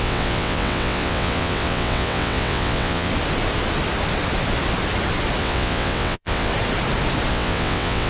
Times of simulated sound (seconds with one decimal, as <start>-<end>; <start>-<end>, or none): 0.0-3.1; 5.4-6.5; 7.3-8.1